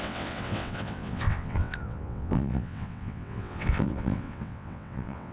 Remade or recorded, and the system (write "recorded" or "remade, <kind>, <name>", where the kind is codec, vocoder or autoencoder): remade, vocoder, WaveNeXt